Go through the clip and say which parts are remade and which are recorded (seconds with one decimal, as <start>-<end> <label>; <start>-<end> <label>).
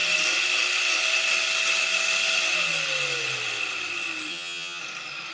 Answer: 0.0-4.3 recorded; 4.3-4.8 remade; 4.8-5.3 recorded